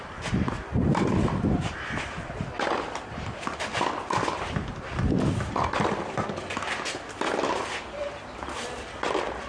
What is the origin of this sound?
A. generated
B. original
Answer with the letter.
B